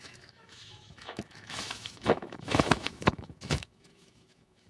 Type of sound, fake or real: fake